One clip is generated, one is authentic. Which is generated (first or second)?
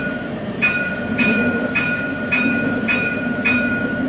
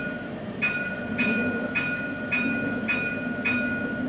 first